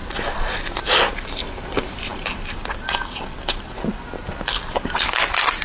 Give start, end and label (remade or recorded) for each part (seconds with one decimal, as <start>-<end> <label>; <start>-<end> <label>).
0.0-5.6 recorded